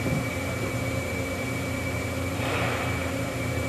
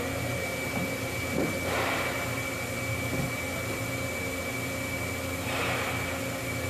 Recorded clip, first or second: second